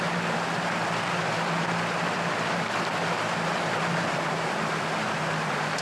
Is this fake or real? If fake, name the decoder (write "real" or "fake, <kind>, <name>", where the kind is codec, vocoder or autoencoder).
real